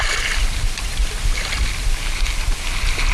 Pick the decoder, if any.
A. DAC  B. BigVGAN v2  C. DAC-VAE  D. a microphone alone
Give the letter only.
D